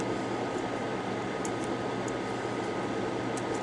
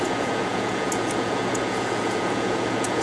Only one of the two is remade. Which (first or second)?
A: second